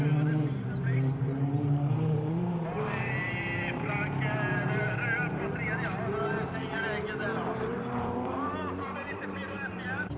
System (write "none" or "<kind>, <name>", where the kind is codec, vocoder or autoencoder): vocoder, BigVGAN v2